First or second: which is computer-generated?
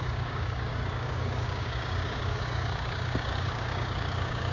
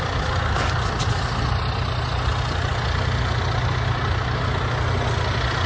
first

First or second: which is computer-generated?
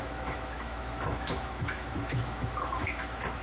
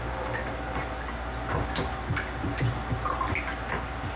first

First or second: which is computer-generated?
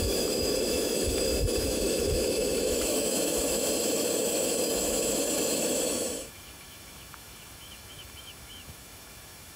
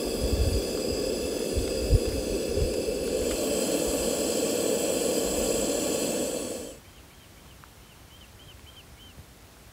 first